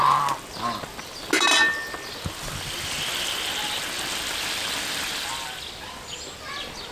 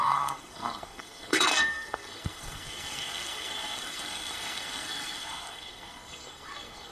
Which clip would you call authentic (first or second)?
first